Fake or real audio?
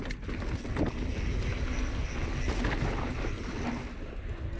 real